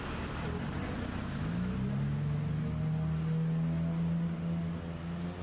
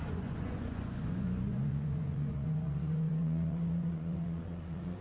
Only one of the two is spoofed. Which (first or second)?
second